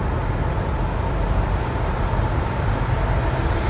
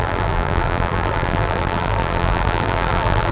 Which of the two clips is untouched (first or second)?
first